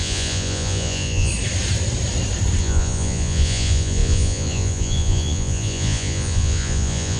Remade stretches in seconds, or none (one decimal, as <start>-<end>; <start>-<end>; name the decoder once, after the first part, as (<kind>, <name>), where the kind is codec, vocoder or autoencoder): 0.0-1.3 (vocoder, Vocos); 2.6-7.2